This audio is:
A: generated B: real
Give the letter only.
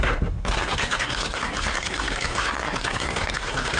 A